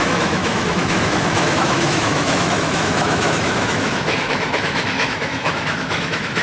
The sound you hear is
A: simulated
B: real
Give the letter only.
A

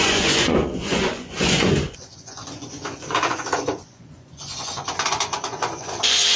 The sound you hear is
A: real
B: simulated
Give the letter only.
B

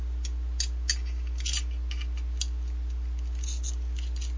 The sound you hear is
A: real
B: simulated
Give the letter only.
A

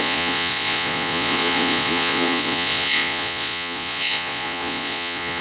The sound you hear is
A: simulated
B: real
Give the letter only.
A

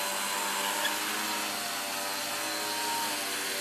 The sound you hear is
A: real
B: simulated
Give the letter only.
A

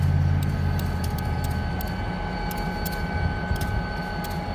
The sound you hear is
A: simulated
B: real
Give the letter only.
B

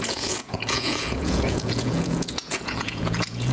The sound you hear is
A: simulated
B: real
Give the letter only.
A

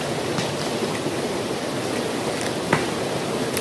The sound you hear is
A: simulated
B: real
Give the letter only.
B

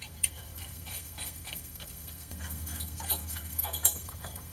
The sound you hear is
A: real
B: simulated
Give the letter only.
B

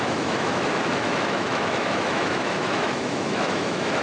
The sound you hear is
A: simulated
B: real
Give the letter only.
A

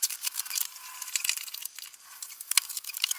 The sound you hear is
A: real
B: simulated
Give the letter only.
B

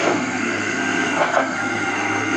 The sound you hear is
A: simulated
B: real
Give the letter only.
A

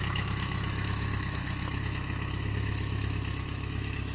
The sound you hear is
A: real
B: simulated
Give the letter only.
B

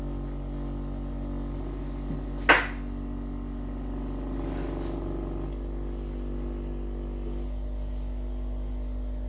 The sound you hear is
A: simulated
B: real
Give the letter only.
B